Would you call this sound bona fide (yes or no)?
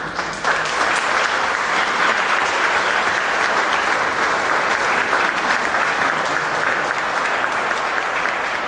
yes